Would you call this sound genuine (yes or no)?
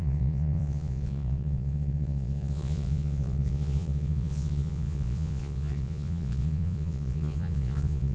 no